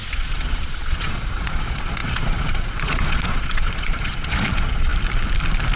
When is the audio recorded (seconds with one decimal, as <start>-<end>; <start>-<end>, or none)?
4.9-5.8